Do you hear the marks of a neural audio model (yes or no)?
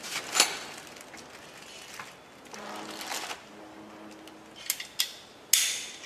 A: no